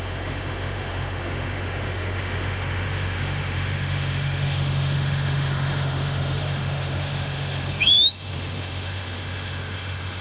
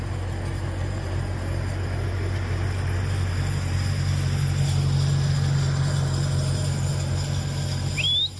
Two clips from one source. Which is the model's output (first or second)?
first